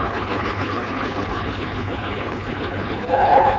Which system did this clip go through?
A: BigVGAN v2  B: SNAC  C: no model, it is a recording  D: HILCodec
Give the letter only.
D